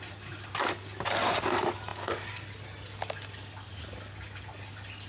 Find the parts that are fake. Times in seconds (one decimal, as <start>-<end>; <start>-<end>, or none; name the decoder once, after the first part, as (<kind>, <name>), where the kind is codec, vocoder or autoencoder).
none